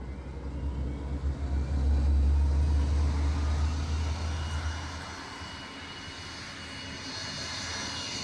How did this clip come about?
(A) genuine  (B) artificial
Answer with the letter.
A